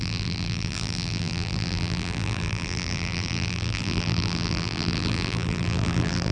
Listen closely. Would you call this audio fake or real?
fake